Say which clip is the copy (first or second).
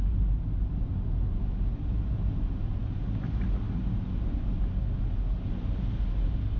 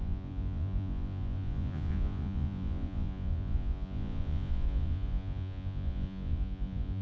second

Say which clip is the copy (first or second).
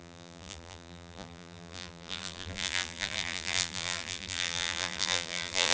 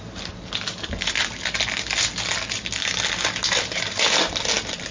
first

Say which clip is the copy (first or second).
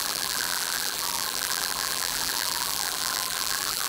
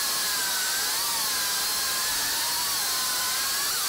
first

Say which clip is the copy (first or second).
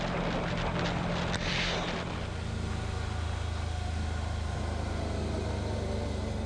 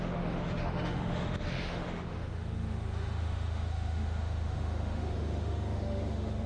second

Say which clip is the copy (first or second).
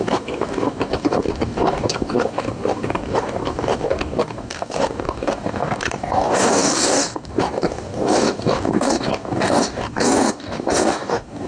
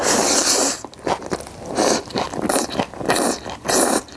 first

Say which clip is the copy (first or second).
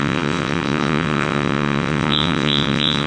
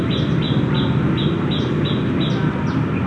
first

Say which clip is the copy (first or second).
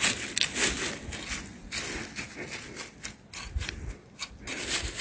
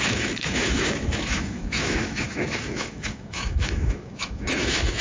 second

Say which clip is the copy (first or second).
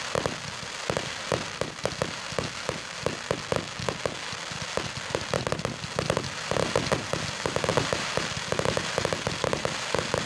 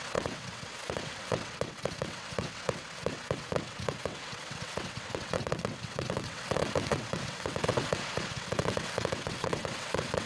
second